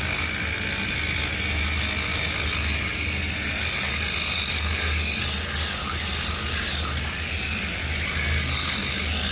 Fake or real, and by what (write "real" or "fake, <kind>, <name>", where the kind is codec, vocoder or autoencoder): real